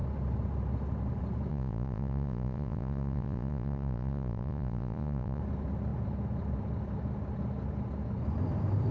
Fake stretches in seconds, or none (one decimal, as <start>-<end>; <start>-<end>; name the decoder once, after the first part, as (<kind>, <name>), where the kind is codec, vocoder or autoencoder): 1.5-5.4 (vocoder, Vocos)